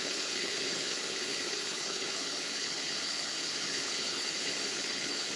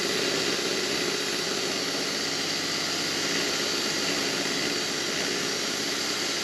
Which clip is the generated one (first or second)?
first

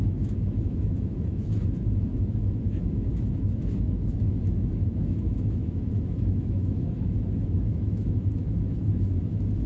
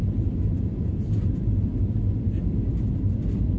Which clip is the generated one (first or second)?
first